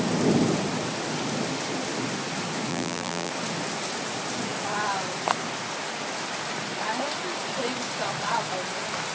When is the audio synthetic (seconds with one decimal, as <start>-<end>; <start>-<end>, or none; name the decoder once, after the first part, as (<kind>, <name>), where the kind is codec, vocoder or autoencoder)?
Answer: 2.7-3.3 (vocoder, BigVGAN v2)